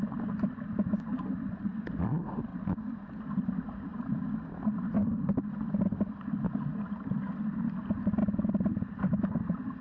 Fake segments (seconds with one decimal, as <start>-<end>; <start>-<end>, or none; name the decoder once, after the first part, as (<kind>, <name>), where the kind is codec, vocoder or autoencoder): none